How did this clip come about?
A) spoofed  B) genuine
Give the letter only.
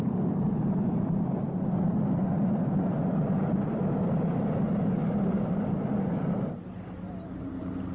B